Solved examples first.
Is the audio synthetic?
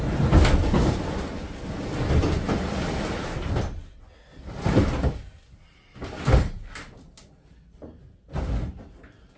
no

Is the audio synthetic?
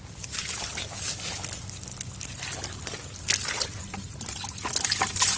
no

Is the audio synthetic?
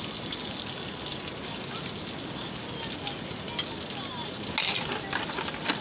no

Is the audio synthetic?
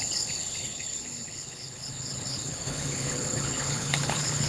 yes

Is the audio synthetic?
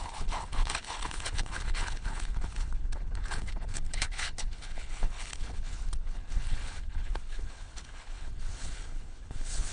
yes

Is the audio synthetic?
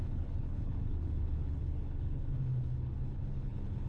yes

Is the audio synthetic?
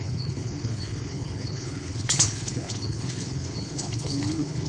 yes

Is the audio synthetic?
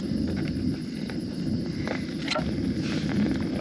no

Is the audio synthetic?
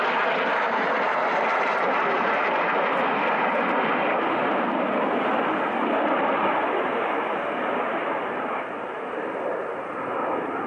no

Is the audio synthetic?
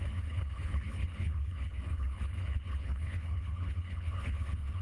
yes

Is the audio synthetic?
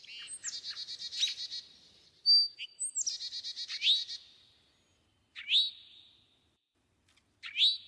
no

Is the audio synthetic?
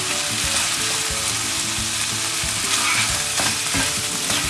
no